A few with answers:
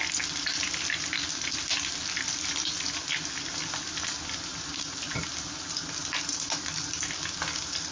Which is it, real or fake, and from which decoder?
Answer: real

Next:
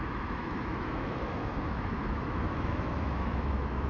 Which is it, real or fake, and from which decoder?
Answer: fake, autoencoder, DAC-VAE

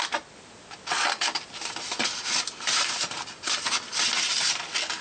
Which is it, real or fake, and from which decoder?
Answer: real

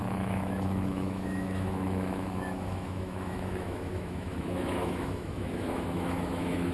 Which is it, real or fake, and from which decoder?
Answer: fake, autoencoder, DAC-VAE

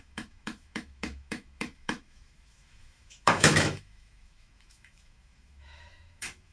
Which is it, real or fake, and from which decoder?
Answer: fake, autoencoder, DAC-VAE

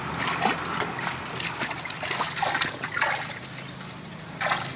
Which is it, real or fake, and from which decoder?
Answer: real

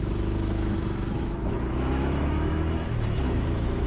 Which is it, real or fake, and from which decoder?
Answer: fake, autoencoder, DAC-VAE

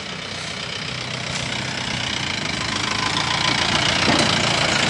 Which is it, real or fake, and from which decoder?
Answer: real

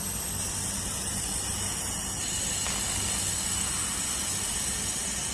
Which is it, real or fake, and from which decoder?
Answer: real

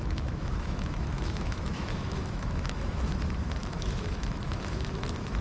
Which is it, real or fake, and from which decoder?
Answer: fake, autoencoder, DAC-VAE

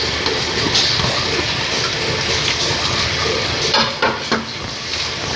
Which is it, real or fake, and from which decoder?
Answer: real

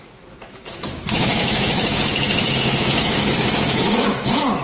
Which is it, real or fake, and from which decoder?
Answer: fake, autoencoder, DAC-VAE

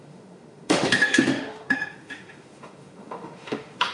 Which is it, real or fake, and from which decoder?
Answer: fake, autoencoder, DAC-VAE